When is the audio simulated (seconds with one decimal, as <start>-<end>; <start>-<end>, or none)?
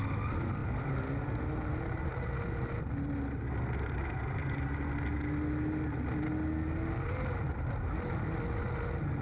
none